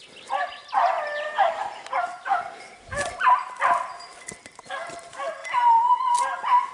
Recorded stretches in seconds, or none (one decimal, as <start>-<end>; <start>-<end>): 0.0-6.7